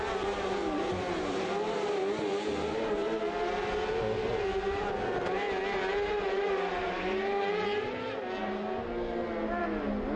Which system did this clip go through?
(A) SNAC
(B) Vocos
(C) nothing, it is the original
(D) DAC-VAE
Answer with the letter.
C